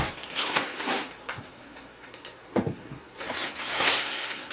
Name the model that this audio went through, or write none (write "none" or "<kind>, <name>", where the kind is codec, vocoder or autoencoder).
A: codec, SNAC